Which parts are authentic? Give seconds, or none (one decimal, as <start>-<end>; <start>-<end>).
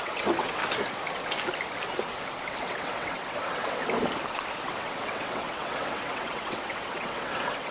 0.6-2.6; 3.8-4.6